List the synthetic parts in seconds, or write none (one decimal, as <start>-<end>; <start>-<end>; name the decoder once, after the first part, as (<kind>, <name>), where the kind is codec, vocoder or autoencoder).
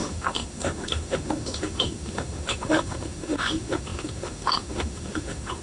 0.0-5.6 (autoencoder, DAC-VAE)